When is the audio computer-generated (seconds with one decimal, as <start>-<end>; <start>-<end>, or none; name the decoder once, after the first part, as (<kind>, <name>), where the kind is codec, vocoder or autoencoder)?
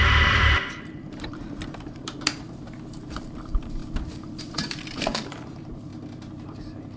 0.0-3.8 (vocoder, BigVGAN v2); 4.4-5.9